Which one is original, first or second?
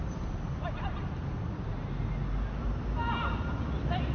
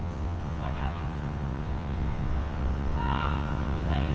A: first